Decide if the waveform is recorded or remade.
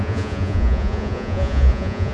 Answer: remade